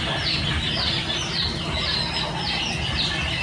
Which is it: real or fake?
real